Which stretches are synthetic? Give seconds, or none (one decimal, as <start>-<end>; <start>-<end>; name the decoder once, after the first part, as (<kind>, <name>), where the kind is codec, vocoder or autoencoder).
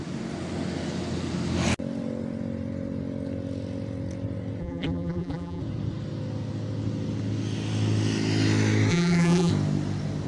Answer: 4.6-5.6 (vocoder, BigVGAN v2); 8.9-9.5